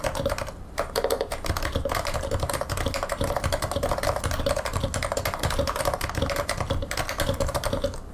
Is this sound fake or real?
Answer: real